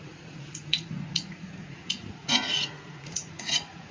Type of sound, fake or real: fake